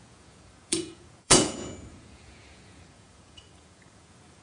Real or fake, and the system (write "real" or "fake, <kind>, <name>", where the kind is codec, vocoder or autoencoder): fake, vocoder, Vocos